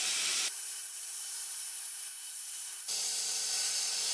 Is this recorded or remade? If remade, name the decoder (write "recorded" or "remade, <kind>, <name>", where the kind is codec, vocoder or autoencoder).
remade, vocoder, BigVGAN v2